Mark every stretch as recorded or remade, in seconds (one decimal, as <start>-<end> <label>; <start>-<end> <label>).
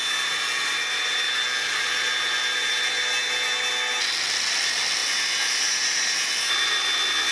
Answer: 0.0-7.3 recorded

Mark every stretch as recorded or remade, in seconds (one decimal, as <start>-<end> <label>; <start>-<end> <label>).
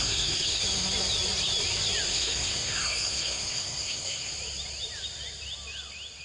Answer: 0.0-0.6 remade; 0.6-2.1 recorded; 2.1-4.3 remade; 4.3-6.2 recorded